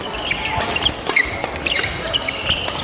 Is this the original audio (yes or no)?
yes